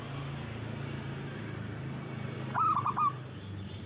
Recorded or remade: recorded